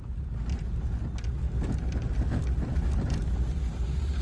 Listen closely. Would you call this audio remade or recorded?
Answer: recorded